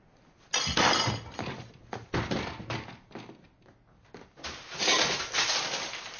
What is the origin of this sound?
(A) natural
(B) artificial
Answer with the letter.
A